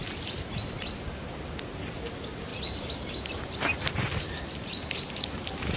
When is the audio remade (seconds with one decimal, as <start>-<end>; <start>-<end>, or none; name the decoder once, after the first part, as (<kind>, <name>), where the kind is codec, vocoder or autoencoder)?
0.7-2.5 (vocoder, BigVGAN v2); 3.3-5.8